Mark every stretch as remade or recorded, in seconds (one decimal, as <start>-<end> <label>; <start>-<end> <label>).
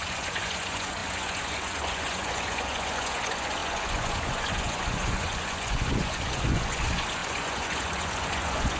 0.0-8.8 remade